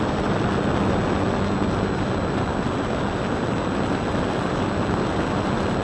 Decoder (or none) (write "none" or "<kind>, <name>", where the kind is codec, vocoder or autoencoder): none